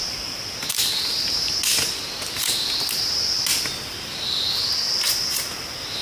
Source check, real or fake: real